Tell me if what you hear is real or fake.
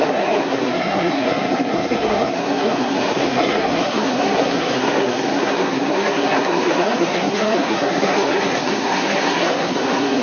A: fake